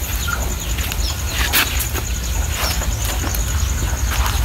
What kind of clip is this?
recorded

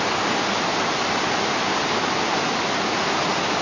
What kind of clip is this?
recorded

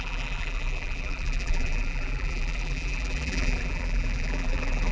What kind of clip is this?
remade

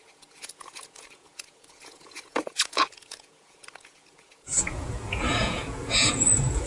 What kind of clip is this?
remade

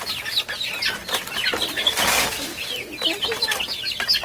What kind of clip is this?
recorded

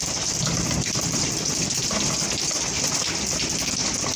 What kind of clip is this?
recorded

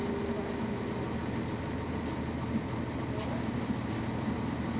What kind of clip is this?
recorded